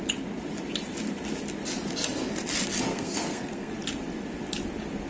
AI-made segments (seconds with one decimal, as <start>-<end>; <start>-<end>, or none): 2.9-3.7